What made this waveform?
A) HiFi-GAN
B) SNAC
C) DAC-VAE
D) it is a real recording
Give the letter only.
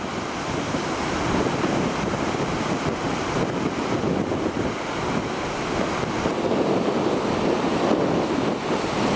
D